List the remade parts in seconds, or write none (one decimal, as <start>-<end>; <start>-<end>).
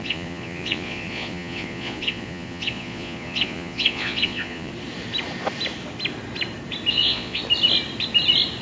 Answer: 0.0-4.7; 6.9-7.4